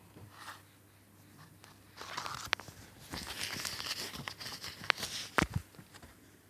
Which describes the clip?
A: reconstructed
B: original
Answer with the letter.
B